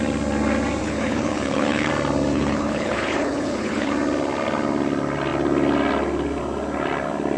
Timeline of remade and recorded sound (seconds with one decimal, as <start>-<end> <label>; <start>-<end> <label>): 0.0-0.8 recorded; 0.8-1.9 remade; 1.9-2.3 recorded; 2.3-3.9 remade; 3.9-7.4 recorded